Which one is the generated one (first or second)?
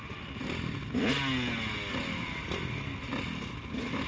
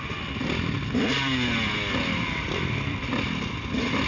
second